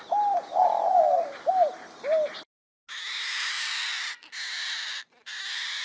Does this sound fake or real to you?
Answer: real